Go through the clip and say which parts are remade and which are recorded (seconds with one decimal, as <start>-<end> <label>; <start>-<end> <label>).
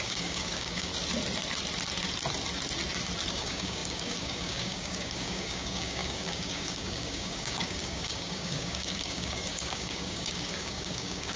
0.0-0.9 remade; 0.9-3.3 recorded; 3.3-11.4 remade